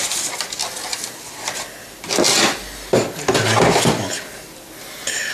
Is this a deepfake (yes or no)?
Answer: no